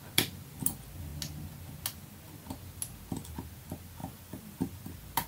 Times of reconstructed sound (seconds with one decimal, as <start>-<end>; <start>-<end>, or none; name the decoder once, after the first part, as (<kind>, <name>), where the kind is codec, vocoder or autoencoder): 4.0-4.7 (vocoder, BigVGAN v2)